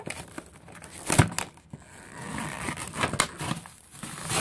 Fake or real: real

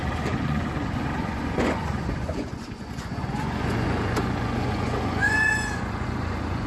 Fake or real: fake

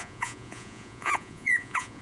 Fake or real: fake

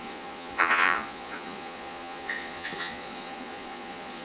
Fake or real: fake